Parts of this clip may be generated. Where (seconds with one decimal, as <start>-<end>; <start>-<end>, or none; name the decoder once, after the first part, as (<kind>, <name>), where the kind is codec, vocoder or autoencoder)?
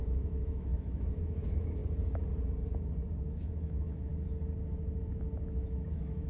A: 0.0-1.8 (autoencoder, DAC-VAE); 3.2-4.1; 5.0-6.3